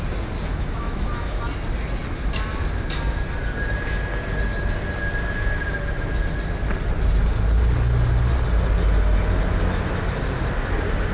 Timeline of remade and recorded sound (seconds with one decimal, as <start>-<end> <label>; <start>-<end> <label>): 0.0-0.5 recorded; 0.5-1.4 remade; 1.4-11.1 recorded